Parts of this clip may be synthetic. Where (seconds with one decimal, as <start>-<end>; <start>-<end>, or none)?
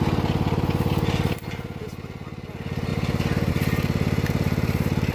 none